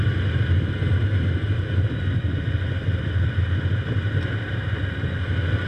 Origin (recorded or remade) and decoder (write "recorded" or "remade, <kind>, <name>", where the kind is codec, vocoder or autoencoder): recorded